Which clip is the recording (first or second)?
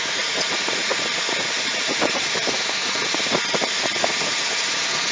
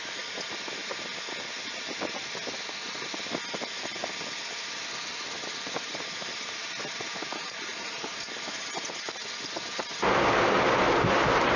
second